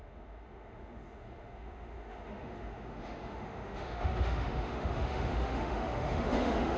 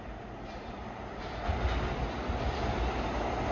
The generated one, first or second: first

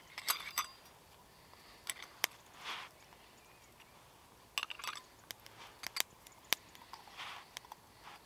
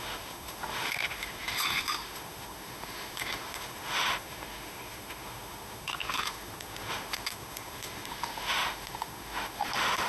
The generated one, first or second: second